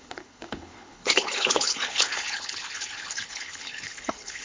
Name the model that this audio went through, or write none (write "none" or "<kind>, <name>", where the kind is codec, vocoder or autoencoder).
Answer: codec, HILCodec